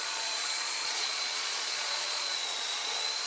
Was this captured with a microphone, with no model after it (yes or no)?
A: no